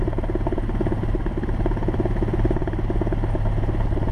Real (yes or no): yes